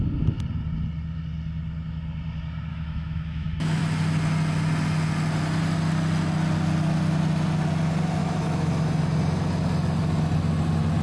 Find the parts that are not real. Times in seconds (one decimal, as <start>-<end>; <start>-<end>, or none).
2.7-3.8; 8.2-8.7